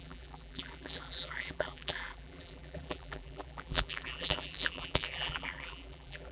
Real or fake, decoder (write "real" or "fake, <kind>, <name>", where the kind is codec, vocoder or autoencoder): fake, vocoder, BigVGAN v2